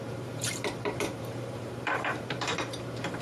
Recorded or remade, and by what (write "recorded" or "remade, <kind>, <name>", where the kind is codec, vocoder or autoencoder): remade, vocoder, BigVGAN v2